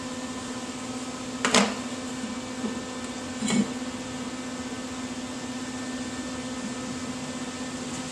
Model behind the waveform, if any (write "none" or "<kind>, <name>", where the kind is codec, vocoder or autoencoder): none